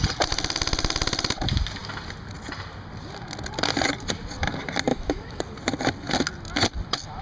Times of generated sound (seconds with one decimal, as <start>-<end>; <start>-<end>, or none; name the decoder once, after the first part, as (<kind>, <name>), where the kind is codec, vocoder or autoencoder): 4.9-5.4 (autoencoder, DAC-VAE)